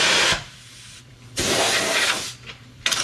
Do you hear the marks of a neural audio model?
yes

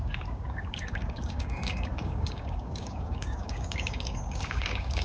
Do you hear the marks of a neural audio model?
yes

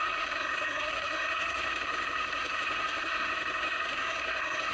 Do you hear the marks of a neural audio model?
yes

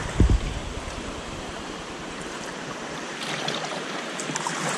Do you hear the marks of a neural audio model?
yes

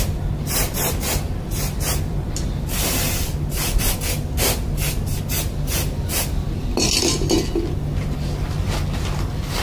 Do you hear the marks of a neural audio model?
no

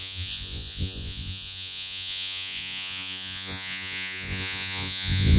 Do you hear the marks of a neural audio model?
yes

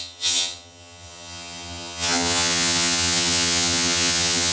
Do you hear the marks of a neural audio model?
yes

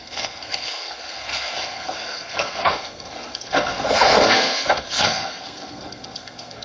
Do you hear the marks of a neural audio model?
yes